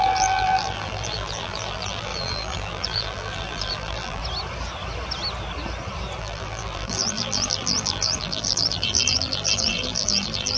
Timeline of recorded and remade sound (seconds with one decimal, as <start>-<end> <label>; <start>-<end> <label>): 0.0-4.2 remade; 4.2-6.2 recorded; 6.2-10.6 remade